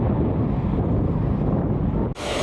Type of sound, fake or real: real